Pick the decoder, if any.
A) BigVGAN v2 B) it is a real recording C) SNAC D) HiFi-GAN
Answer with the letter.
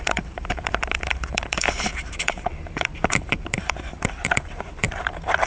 A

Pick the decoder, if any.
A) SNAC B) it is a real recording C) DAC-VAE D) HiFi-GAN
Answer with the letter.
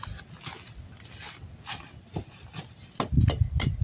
B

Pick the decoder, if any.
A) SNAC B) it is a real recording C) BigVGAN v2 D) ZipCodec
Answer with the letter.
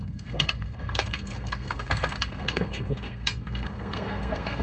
A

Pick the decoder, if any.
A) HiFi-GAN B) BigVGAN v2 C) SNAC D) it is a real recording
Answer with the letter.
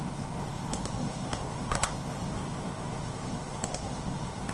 C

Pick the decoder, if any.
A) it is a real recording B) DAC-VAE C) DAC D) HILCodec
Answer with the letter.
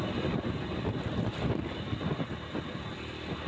A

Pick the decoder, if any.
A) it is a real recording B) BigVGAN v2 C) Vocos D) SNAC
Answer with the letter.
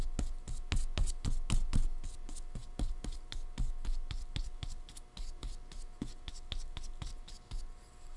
A